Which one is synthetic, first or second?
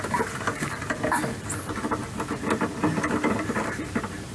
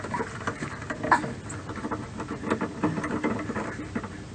first